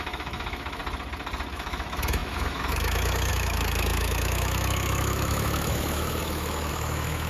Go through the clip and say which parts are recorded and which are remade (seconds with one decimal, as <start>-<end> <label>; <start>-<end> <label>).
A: 0.0-0.8 remade; 0.8-1.5 recorded; 1.5-7.3 remade